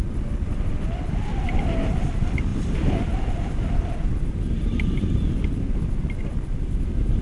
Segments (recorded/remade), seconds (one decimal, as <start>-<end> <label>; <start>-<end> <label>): 0.0-7.2 recorded